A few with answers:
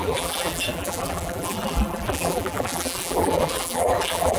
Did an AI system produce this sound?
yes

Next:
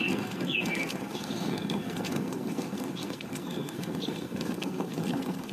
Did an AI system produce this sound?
yes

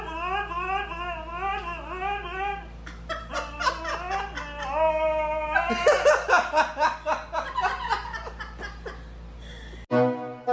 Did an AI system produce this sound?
no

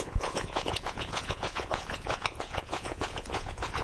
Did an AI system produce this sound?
yes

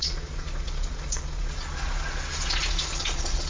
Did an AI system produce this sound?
yes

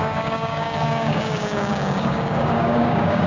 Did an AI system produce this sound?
yes